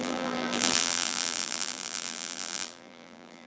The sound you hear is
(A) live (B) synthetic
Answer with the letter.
B